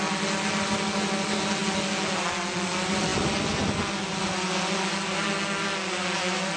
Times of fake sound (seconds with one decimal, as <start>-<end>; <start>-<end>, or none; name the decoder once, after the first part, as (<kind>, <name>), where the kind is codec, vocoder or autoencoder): none

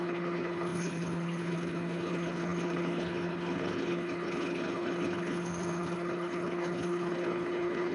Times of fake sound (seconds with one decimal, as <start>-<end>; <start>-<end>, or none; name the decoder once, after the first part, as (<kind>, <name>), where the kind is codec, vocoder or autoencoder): 0.0-7.9 (codec, HILCodec)